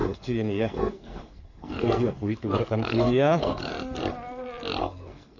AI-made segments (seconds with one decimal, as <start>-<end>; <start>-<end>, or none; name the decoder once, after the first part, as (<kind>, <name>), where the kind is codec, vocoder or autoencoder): 0.0-3.7 (codec, SNAC); 4.8-5.4